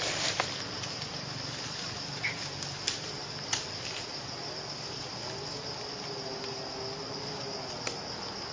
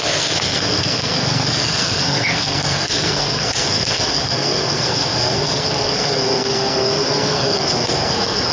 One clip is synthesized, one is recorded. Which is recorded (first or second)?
first